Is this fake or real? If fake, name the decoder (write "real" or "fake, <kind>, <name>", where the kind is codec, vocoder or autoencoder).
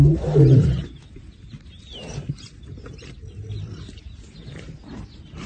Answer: real